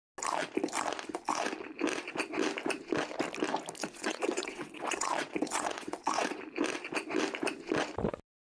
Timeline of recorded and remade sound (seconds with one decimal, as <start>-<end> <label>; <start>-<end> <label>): 0.0-3.8 recorded; 3.8-6.4 remade; 6.4-8.6 recorded